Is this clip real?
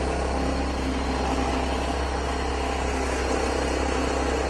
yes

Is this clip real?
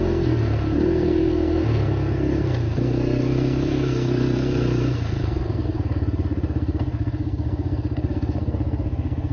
no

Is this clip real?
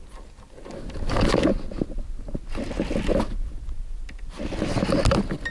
yes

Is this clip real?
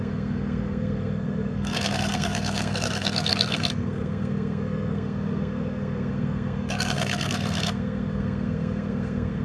no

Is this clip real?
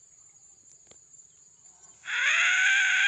yes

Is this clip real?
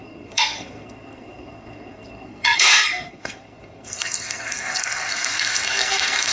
no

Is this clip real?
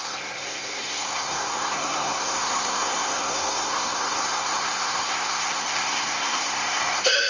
no